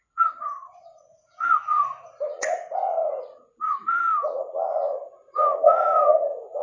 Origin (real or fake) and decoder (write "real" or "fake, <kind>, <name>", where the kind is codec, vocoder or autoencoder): fake, vocoder, Vocos